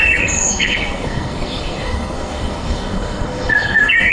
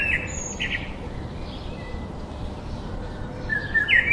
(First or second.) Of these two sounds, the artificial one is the first